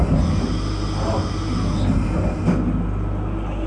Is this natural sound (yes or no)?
yes